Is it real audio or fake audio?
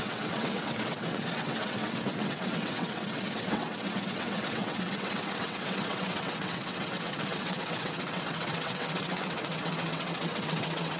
fake